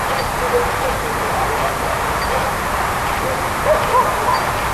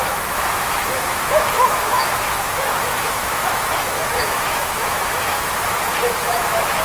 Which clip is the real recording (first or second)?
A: first